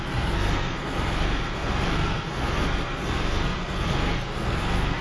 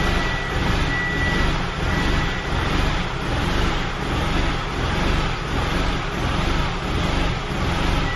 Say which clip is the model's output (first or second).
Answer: first